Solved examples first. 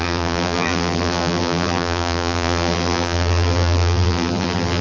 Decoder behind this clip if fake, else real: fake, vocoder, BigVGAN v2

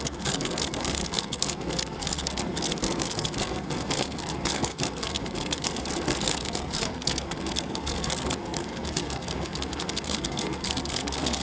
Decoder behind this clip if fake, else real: fake, codec, SNAC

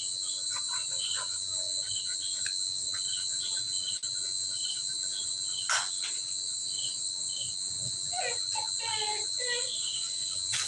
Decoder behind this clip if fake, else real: real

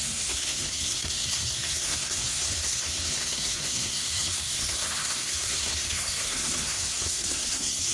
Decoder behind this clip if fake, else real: fake, codec, SNAC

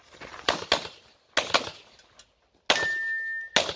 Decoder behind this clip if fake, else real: real